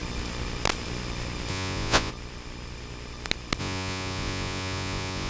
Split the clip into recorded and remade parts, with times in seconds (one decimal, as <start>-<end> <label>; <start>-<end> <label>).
0.0-1.5 recorded; 1.5-2.1 remade; 2.1-3.6 recorded; 3.6-5.3 remade